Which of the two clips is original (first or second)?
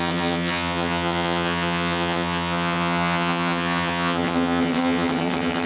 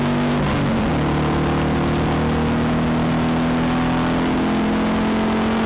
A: second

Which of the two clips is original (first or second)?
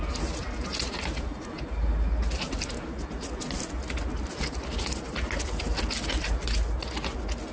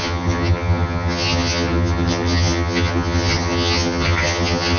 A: first